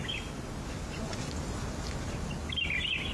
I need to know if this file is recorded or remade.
recorded